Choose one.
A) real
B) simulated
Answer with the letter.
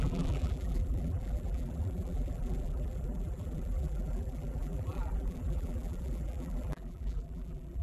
B